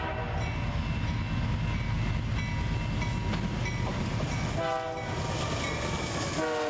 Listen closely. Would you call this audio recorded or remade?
recorded